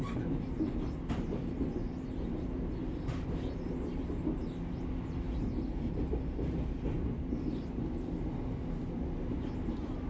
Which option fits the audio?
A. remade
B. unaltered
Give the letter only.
B